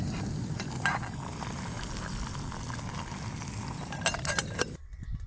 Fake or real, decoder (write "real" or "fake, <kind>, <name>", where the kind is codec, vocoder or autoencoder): real